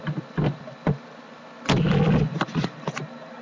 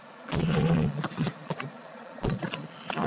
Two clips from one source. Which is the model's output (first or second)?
second